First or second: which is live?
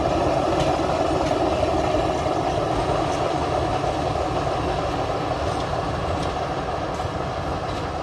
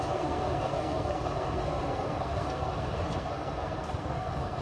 first